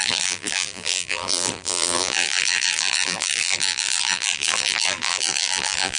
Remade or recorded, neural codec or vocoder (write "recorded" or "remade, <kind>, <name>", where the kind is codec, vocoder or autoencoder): remade, vocoder, BigVGAN v2